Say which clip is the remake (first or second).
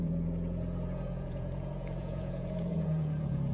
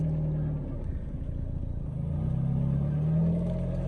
first